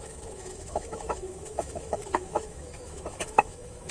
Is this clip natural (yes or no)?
no